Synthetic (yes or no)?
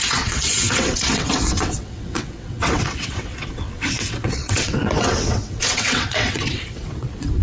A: yes